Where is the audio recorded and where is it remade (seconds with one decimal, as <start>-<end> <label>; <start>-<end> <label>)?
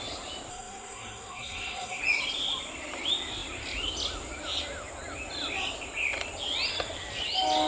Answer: 0.0-0.5 recorded; 0.5-2.0 remade; 2.0-7.7 recorded